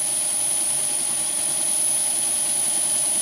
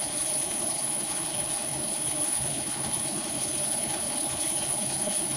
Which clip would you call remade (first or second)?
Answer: second